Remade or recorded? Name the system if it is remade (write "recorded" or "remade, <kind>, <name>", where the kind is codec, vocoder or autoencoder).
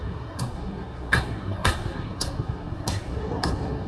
remade, codec, SNAC